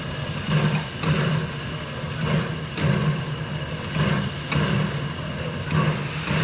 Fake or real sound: real